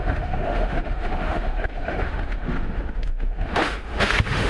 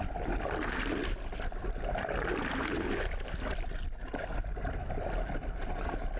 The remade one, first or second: first